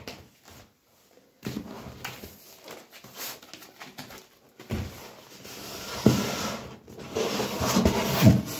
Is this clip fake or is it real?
real